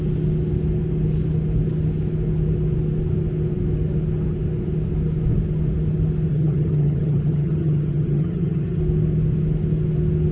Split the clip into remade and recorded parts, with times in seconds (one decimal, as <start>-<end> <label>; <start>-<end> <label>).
0.0-6.3 recorded; 6.3-8.8 remade; 8.8-10.3 recorded